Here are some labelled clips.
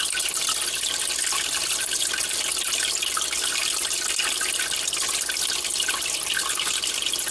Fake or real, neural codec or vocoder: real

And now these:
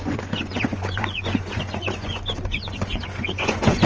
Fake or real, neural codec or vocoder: fake, vocoder, Vocos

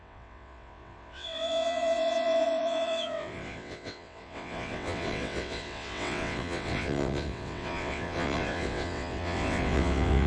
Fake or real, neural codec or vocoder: fake, vocoder, WaveNeXt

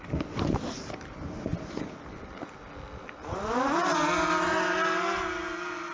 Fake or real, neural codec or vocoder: real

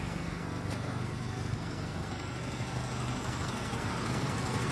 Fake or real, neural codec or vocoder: fake, codec, SNAC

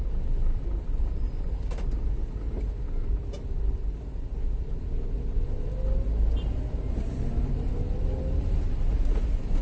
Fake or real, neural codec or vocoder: real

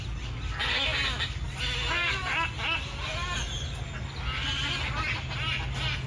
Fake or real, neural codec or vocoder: real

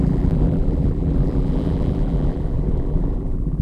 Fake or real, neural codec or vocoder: fake, vocoder, BigVGAN v2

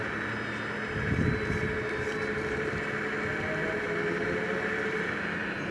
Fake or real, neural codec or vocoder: real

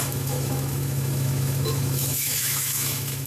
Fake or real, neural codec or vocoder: fake, autoencoder, DAC-VAE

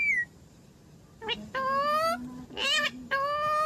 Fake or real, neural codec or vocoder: real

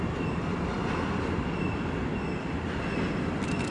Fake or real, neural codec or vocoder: real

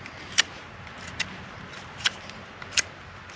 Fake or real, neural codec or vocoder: real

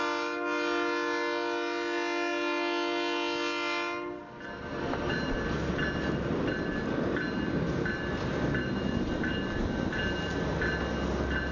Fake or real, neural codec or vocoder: real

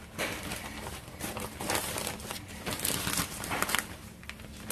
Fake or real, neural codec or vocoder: real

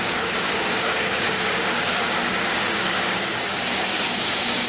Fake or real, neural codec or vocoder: fake, codec, DAC